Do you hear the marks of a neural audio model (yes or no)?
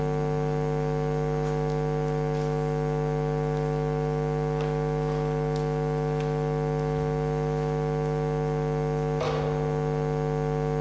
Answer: no